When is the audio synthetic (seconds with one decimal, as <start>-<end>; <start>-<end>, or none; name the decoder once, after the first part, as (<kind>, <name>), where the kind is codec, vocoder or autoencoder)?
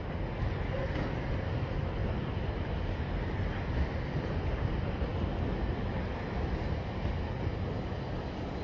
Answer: 2.0-3.7 (vocoder, BigVGAN v2)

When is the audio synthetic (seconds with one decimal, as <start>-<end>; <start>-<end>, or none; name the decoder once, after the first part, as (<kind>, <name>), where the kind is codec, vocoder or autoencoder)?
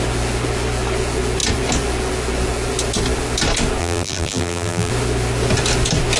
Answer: 3.8-4.9 (vocoder, BigVGAN v2)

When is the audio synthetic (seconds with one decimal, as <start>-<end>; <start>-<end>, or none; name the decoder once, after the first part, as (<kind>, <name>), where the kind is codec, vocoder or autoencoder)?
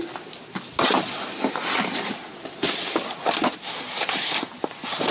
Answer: 2.3-3.4 (vocoder, BigVGAN v2)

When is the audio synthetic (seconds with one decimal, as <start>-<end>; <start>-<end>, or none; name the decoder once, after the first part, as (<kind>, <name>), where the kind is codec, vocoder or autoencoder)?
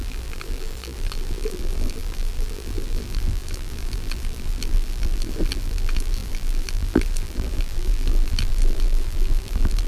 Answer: 0.0-9.9 (vocoder, BigVGAN v2)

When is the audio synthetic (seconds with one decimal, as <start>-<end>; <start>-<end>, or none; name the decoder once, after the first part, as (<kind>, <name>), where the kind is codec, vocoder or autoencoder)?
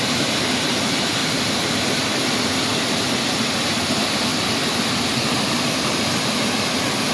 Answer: 0.0-2.7 (vocoder, BigVGAN v2); 3.3-4.3; 5.4-7.1